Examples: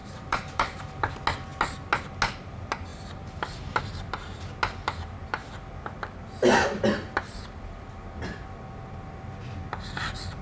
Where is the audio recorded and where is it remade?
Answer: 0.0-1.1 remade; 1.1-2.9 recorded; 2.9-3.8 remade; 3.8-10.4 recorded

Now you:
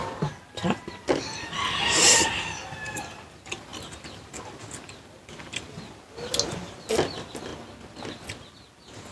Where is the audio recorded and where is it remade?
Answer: 0.0-0.9 recorded; 0.9-3.7 remade; 3.7-7.1 recorded; 7.1-7.5 remade; 7.5-9.1 recorded

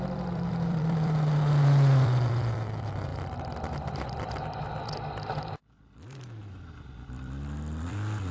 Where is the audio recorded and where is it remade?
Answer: 0.0-3.1 remade; 3.1-7.1 recorded; 7.1-8.3 remade

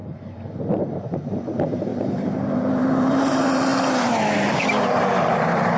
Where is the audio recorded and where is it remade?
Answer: 0.0-3.7 remade; 3.7-4.4 recorded; 4.4-5.8 remade

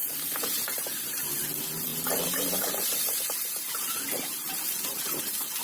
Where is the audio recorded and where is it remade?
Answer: 0.0-1.2 remade; 1.2-1.9 recorded; 1.9-5.6 remade

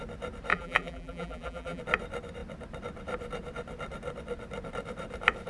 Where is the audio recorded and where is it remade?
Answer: 0.0-0.5 recorded; 0.5-1.8 remade; 1.8-5.5 recorded